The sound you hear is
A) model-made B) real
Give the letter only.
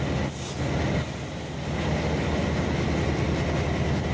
B